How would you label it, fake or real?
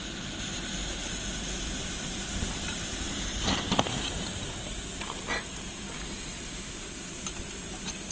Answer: real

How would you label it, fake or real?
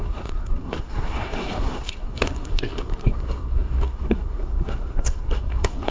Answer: fake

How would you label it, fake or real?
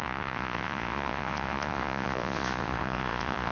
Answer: fake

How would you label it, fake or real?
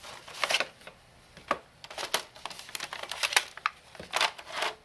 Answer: real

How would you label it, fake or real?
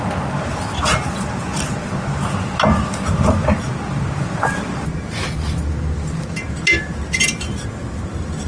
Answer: real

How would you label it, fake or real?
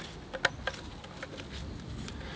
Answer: real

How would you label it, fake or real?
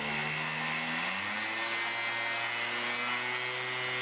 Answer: real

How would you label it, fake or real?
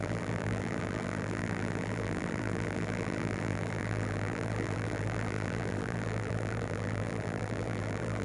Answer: fake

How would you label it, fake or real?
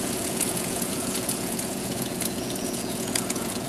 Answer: fake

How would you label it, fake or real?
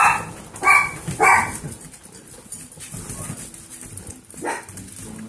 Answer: real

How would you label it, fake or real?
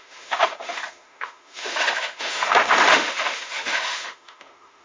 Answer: fake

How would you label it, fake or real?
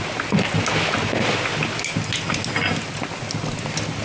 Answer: real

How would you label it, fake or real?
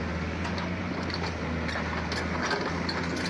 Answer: real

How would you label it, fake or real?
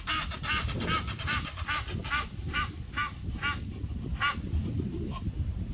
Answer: real